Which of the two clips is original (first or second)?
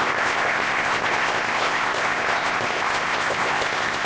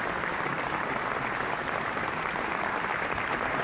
second